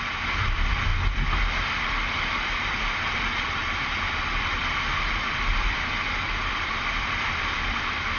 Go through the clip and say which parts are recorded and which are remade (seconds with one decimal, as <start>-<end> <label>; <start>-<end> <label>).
0.0-0.9 remade; 0.9-1.9 recorded; 1.9-8.2 remade